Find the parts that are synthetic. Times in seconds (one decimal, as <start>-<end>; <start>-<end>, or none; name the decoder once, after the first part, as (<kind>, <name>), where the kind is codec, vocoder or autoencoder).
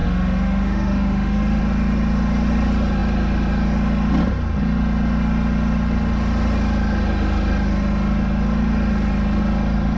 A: 0.0-1.6 (autoencoder, DAC-VAE)